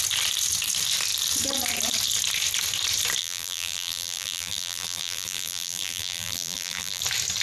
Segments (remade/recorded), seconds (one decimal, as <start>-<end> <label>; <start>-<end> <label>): 0.0-3.2 recorded; 3.2-7.0 remade; 7.0-7.4 recorded